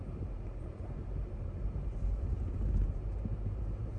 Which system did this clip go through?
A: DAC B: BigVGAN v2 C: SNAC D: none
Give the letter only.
B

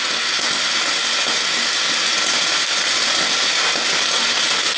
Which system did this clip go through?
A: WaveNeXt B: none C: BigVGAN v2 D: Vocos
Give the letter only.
B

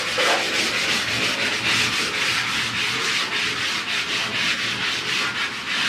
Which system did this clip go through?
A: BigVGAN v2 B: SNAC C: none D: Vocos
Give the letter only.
C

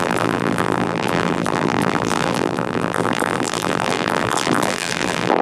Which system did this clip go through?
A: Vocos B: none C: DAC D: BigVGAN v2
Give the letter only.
D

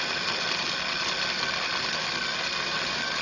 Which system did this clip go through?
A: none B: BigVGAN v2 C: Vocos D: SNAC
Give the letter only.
A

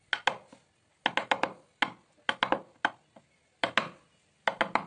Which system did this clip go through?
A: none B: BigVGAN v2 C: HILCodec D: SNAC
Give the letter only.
A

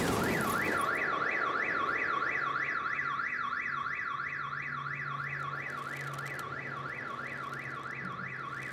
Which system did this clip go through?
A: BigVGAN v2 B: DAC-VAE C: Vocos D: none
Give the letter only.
D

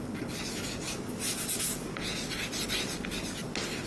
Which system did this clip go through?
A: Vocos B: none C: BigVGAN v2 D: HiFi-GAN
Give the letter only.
B